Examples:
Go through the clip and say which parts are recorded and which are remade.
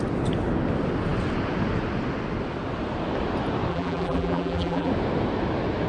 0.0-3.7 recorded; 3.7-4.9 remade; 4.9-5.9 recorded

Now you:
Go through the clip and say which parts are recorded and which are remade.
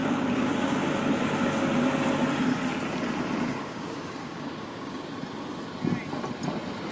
0.0-1.0 remade; 1.0-3.6 recorded; 3.6-5.1 remade; 5.1-6.9 recorded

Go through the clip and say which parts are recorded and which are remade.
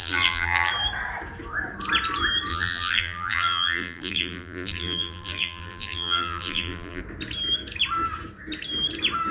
0.0-0.7 remade; 0.7-2.5 recorded; 2.5-7.0 remade; 7.0-9.3 recorded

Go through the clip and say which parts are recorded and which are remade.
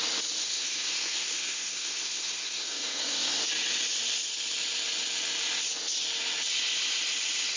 0.0-0.4 recorded; 0.4-3.4 remade; 3.4-7.6 recorded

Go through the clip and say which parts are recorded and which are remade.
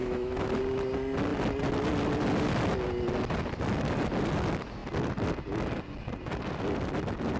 0.0-0.6 remade; 0.6-7.4 recorded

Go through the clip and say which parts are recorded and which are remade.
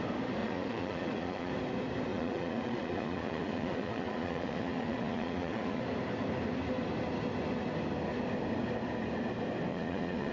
0.0-0.4 recorded; 0.4-1.5 remade; 1.5-2.1 recorded; 2.1-5.8 remade; 5.8-9.7 recorded; 9.7-10.3 remade